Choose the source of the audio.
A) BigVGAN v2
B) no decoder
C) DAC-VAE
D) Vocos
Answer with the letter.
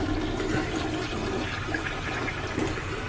B